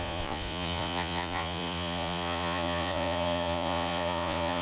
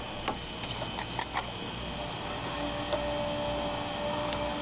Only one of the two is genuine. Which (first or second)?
second